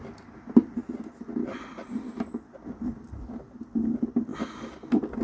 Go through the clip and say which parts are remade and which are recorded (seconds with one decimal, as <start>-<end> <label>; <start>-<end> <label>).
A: 0.0-5.2 recorded